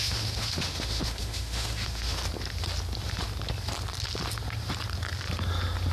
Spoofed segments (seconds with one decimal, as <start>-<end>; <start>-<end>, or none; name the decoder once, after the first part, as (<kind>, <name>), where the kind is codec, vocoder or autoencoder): 0.0-2.2 (autoencoder, DAC-VAE)